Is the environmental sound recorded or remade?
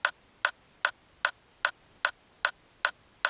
recorded